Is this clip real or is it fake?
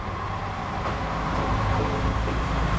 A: fake